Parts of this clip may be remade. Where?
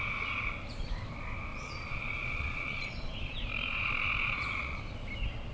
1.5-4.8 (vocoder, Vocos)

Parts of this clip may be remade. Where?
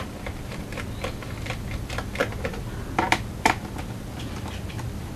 0.0-5.2 (vocoder, BigVGAN v2)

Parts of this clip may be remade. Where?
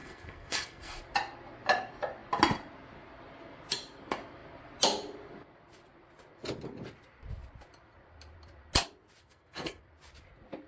0.0-1.0 (codec, SNAC); 9.2-9.8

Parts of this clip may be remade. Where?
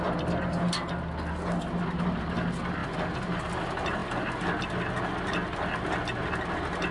none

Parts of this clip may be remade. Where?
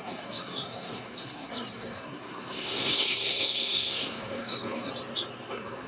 0.0-4.9 (codec, SNAC); 5.5-5.9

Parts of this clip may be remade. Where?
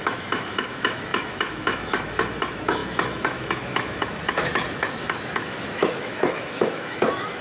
0.0-7.4 (autoencoder, DAC-VAE)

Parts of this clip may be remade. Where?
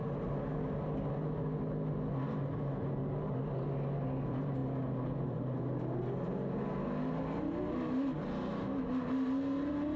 none